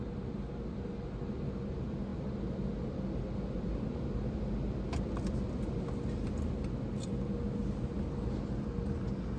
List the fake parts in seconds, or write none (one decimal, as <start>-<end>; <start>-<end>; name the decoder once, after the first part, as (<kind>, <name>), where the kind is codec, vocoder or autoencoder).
none